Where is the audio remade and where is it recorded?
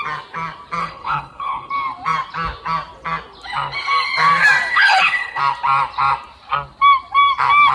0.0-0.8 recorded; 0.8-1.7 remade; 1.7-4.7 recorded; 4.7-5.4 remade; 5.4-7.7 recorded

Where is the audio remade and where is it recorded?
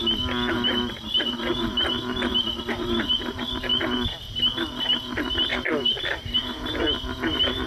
0.0-7.7 recorded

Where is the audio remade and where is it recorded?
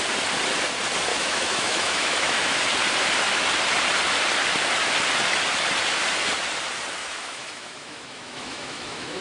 0.0-1.1 recorded; 1.1-2.6 remade; 2.6-7.0 recorded; 7.0-9.2 remade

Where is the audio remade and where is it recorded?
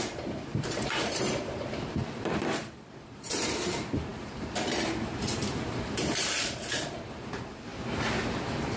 0.0-2.0 remade; 2.0-3.1 recorded; 3.1-7.7 remade; 7.7-8.8 recorded